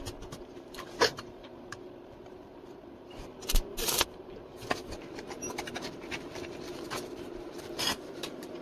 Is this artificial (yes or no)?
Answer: yes